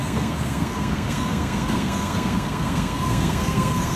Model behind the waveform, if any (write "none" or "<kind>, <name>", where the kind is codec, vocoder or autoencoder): codec, SNAC